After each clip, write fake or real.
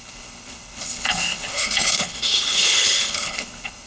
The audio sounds fake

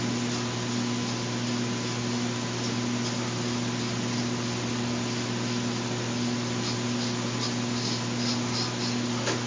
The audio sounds real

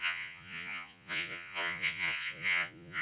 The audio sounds fake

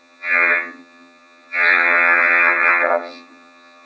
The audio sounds fake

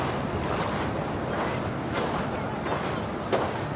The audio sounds real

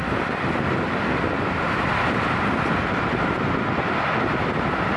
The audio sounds real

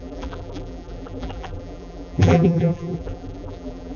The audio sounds fake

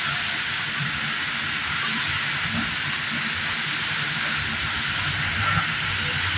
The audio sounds real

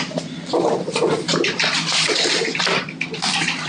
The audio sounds real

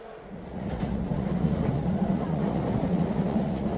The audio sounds fake